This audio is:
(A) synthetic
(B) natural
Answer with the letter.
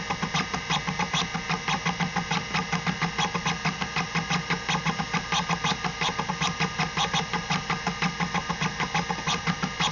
B